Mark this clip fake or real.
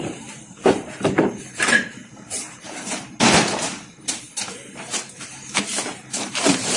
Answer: fake